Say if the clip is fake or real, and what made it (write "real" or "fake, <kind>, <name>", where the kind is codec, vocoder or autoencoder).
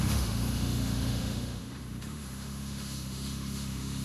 fake, autoencoder, DAC-VAE